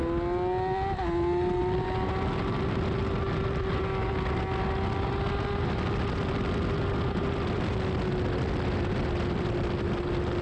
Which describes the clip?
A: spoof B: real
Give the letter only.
B